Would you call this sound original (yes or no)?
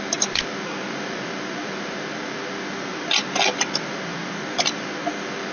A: yes